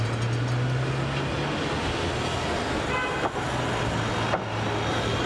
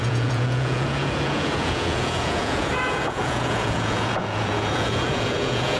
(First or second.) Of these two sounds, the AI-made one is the second